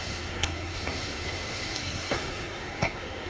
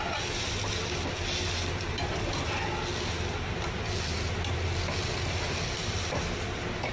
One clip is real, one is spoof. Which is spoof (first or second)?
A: first